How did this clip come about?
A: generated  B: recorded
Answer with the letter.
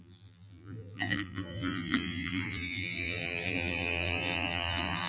A